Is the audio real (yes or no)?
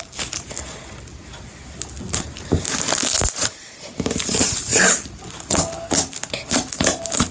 yes